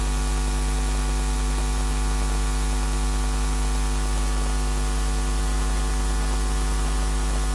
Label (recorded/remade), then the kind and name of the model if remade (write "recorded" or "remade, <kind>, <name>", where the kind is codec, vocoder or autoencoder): recorded